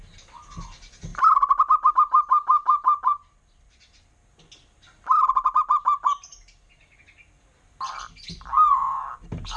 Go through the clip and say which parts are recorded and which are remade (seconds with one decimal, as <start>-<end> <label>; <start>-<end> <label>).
0.0-9.6 recorded